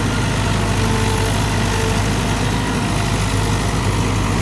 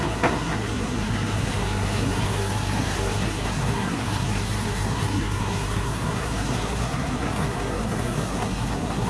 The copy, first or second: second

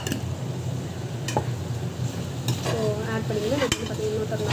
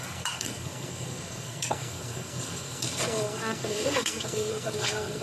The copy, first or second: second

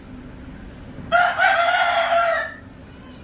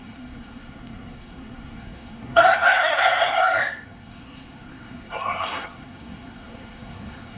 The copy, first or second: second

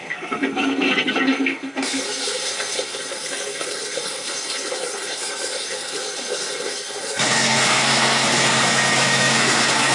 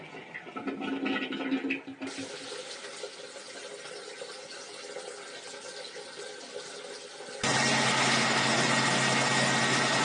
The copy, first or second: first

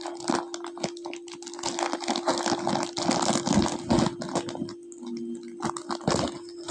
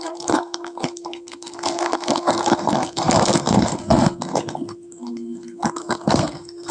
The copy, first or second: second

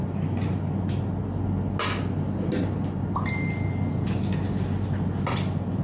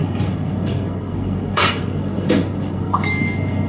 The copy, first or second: second